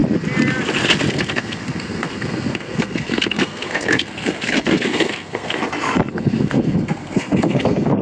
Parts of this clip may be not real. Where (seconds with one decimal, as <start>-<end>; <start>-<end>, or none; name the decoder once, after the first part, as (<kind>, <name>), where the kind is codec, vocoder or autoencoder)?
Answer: 1.1-5.6 (codec, SNAC); 6.1-8.0